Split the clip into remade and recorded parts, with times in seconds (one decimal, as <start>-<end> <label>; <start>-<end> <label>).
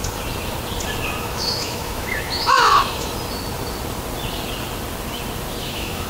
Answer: 0.0-1.2 recorded; 1.2-3.1 remade; 3.1-5.6 recorded; 5.6-6.1 remade